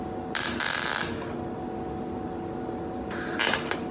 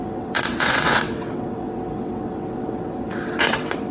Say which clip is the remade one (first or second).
second